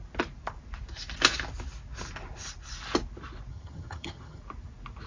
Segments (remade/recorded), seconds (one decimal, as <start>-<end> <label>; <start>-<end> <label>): 0.0-3.5 recorded; 3.5-4.4 remade; 4.4-5.1 recorded